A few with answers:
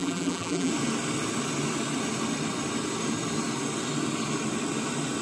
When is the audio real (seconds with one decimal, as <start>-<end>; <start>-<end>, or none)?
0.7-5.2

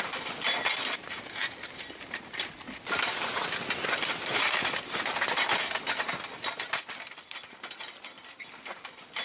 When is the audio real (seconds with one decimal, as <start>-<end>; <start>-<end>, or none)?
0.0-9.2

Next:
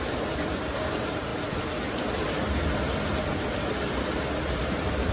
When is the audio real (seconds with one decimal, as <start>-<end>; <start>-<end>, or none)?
1.3-4.4